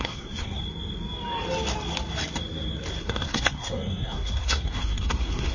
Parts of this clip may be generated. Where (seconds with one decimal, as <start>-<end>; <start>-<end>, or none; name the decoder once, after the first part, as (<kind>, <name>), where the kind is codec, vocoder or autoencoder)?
0.0-0.6 (codec, SNAC); 3.0-5.5